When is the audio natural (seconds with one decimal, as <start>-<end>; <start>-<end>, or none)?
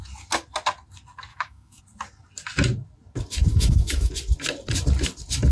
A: 0.0-1.3; 1.8-3.5; 4.1-5.5